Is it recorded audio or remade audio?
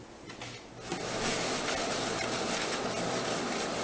recorded